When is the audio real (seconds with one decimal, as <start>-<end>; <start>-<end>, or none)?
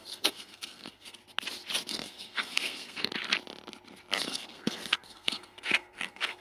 1.2-1.9; 3.1-4.2